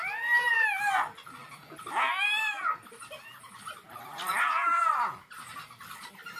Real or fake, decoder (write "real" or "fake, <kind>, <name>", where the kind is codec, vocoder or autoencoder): real